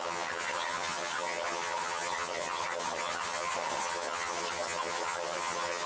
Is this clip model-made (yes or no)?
yes